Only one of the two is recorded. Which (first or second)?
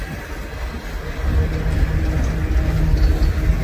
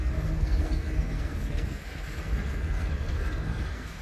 first